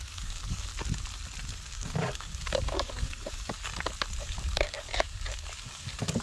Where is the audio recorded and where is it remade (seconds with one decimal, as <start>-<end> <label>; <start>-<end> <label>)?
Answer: 0.0-0.7 remade; 0.7-1.5 recorded; 1.5-3.7 remade; 3.7-4.2 recorded; 4.2-6.2 remade